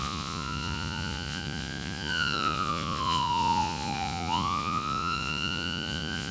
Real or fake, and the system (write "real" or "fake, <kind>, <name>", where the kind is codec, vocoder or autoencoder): fake, vocoder, Vocos